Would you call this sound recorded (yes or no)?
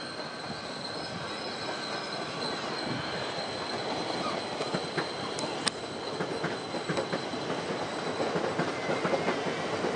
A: yes